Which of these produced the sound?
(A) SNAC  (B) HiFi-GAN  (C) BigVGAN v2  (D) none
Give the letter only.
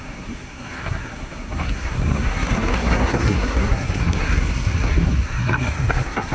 A